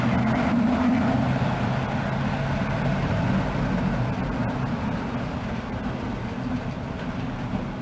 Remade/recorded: recorded